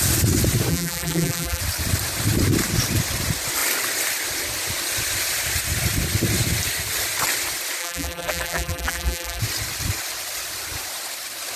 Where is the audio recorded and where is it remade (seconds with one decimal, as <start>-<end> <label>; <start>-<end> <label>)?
0.0-0.7 recorded; 0.7-1.6 remade; 1.6-7.8 recorded; 7.8-9.4 remade; 9.4-11.6 recorded